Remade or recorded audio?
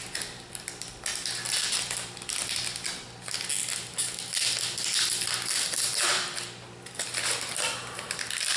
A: recorded